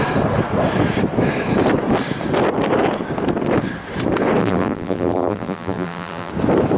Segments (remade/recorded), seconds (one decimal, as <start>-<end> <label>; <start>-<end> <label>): 0.0-4.4 recorded; 4.4-6.3 remade; 6.3-6.8 recorded